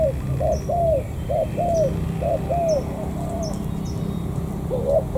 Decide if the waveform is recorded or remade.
recorded